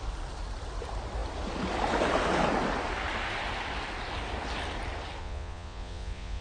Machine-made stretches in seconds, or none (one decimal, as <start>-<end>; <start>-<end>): 5.2-6.4